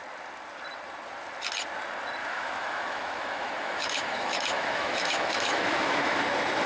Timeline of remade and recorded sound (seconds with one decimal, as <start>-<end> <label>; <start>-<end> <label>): 0.0-2.2 recorded; 2.2-6.2 remade; 6.2-6.7 recorded